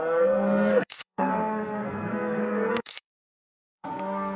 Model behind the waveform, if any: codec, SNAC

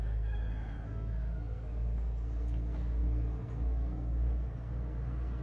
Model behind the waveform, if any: codec, SNAC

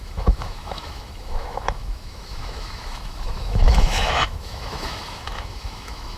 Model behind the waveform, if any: autoencoder, DAC-VAE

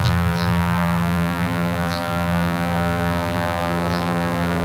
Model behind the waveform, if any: vocoder, BigVGAN v2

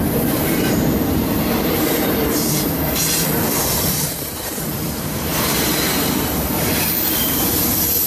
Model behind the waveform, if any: vocoder, BigVGAN v2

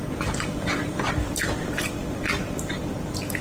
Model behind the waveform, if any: vocoder, BigVGAN v2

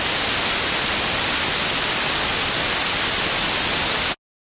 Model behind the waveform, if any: none